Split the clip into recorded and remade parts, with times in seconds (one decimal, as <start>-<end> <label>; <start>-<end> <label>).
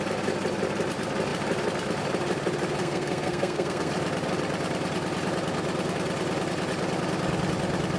0.0-2.8 recorded; 2.8-3.9 remade; 3.9-8.0 recorded